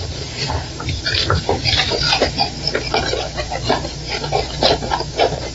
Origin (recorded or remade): recorded